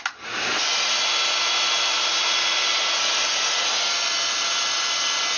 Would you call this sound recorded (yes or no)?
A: yes